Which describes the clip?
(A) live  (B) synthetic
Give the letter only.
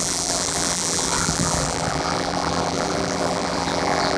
B